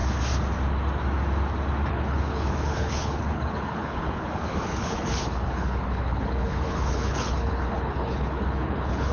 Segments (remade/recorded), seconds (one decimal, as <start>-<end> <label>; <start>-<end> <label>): 0.0-1.9 recorded; 1.9-9.1 remade